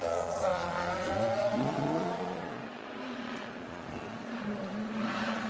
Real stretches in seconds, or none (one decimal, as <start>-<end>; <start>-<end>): none